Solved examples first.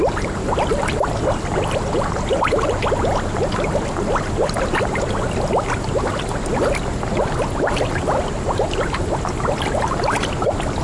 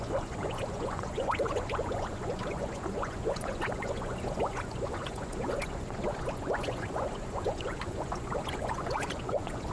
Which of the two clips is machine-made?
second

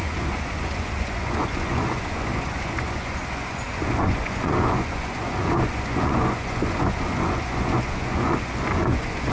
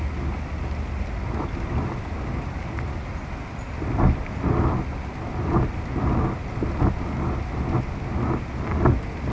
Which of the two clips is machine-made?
first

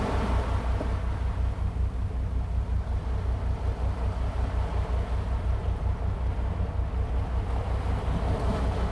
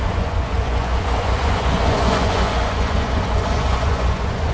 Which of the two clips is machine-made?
second